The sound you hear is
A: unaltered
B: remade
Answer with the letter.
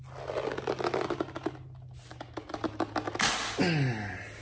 A